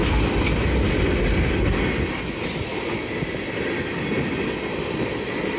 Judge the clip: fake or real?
real